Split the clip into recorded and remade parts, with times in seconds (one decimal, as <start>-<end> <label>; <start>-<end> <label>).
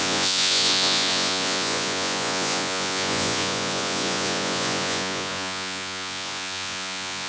0.0-7.3 remade